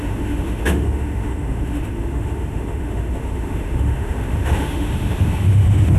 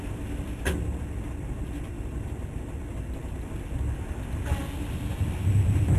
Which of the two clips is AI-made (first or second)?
first